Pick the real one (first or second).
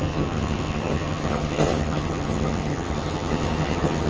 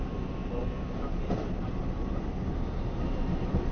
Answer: second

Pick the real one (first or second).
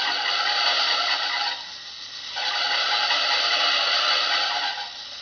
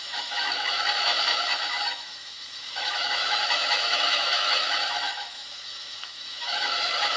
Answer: first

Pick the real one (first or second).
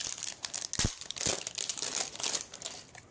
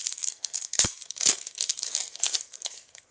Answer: first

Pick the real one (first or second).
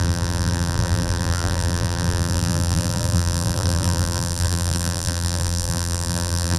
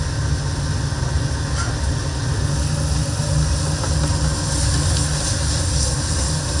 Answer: second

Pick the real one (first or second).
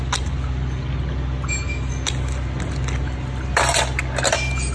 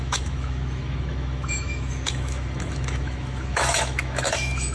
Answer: first